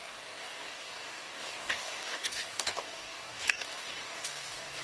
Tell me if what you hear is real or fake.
fake